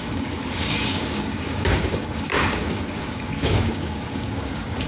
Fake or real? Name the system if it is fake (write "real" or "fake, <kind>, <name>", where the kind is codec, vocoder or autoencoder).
fake, codec, DAC